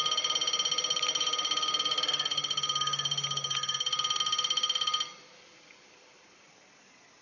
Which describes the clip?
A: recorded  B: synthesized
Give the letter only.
A